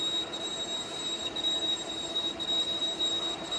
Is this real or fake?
real